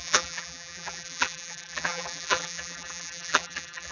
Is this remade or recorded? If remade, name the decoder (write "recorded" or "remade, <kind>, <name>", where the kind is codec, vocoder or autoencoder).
remade, vocoder, BigVGAN v2